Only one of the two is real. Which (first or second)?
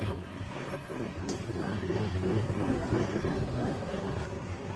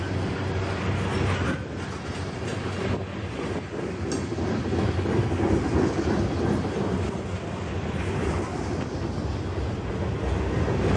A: second